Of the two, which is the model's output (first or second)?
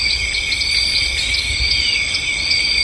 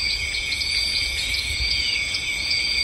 second